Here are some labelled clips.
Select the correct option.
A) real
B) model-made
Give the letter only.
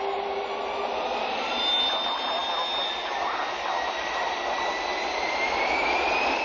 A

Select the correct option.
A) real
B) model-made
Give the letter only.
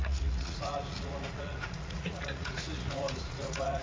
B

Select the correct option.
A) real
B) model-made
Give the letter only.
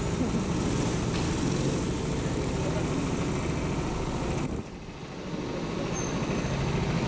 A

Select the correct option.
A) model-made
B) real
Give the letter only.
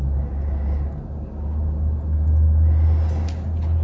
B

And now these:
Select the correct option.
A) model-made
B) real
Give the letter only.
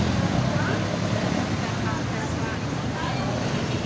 B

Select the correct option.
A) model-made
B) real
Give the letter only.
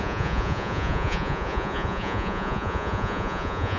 A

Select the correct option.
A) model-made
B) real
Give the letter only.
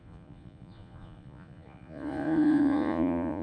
A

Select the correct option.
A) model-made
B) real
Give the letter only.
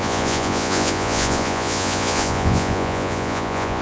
A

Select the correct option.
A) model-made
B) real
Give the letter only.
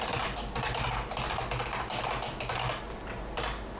B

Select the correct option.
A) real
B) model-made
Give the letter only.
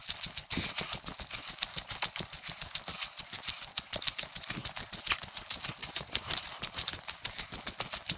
A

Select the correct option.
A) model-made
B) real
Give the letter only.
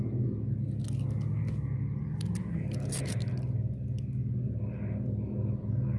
B